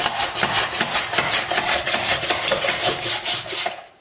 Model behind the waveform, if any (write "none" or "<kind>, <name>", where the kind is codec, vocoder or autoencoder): none